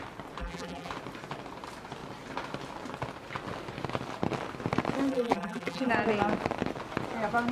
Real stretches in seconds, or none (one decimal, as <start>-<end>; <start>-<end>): 0.0-0.4; 0.9-5.1; 5.9-7.5